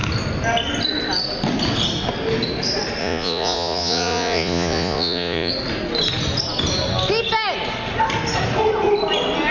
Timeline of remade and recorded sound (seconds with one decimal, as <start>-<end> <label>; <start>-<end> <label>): 0.0-3.0 recorded; 3.0-5.5 remade; 5.5-9.5 recorded